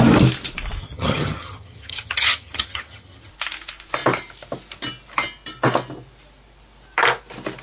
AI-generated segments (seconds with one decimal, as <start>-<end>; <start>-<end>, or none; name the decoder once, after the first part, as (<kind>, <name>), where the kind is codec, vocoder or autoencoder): 0.8-3.3 (vocoder, HiFi-GAN)